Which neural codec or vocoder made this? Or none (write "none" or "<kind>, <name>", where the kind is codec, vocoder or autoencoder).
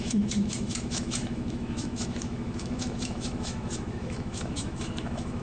autoencoder, DAC-VAE